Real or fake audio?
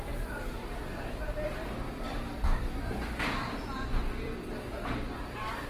fake